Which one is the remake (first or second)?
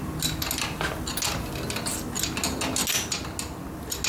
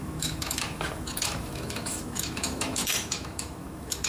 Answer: second